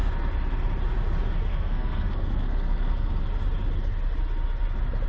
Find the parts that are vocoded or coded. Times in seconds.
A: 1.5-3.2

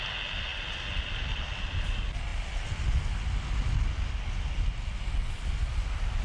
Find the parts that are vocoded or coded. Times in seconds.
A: none

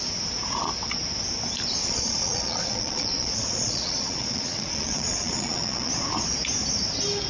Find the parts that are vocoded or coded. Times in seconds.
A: 1.8-5.9

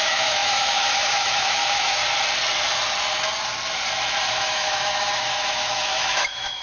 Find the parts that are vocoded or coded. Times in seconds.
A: 0.0-2.0; 4.3-6.6

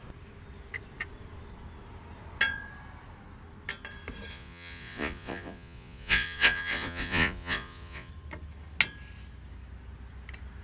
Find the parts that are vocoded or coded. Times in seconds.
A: 4.3-8.1